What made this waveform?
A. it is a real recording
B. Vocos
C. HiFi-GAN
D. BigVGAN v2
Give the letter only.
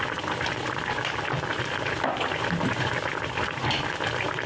A